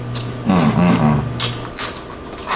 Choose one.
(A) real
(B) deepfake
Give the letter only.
A